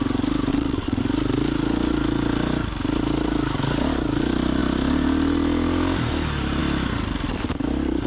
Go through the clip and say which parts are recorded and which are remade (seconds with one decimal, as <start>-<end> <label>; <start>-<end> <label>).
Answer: 0.0-0.5 recorded; 0.5-1.0 remade; 1.0-8.1 recorded